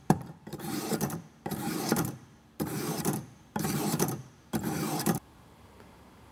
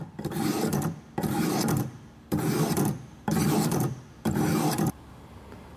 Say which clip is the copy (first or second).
first